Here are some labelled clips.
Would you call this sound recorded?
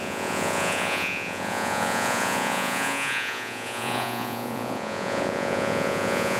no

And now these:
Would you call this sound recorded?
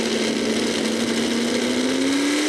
yes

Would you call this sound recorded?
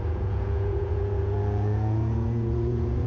no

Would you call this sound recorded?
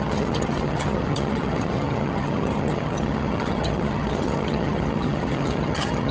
no